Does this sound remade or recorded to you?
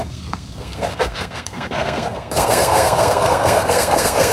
remade